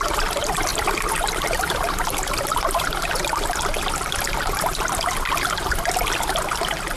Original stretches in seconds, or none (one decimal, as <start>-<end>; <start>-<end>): 0.0-7.0